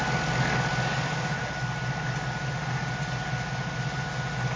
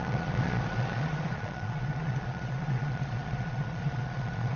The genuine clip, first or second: first